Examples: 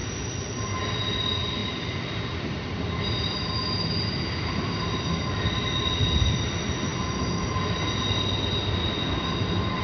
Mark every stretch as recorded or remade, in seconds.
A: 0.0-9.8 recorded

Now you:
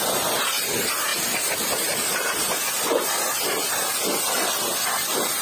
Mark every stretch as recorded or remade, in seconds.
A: 0.0-5.4 recorded